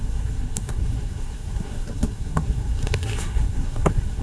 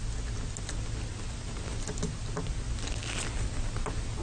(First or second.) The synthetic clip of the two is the first